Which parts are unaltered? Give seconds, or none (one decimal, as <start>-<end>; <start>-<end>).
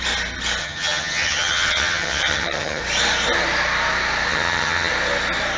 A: 0.0-0.6; 2.8-4.3; 4.9-5.6